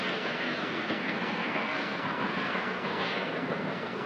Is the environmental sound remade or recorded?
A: remade